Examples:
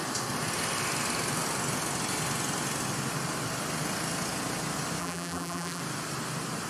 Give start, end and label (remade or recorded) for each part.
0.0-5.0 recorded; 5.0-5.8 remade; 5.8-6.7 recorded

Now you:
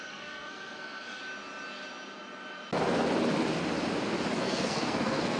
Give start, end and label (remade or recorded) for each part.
0.0-1.2 remade; 1.2-4.4 recorded; 4.4-5.4 remade

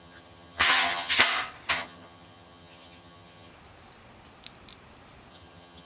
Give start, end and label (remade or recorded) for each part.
0.0-1.2 remade; 1.2-1.7 recorded; 1.7-3.5 remade; 3.5-5.3 recorded; 5.3-5.9 remade

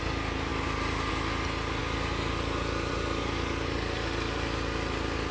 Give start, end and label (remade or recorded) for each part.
0.0-5.3 recorded

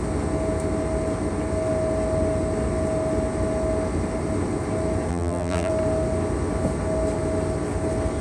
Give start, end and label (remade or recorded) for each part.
0.0-5.1 recorded; 5.1-5.7 remade; 5.7-8.2 recorded

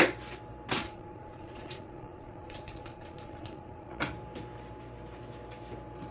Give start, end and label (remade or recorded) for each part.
0.0-0.8 recorded; 0.8-4.0 remade; 4.0-6.1 recorded